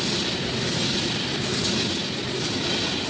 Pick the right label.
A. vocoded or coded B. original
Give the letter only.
B